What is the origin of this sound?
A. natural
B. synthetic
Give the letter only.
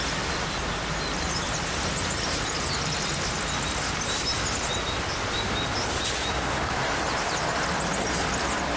A